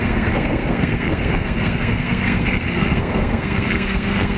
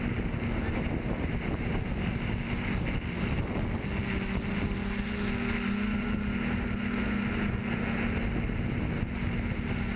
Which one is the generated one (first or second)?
first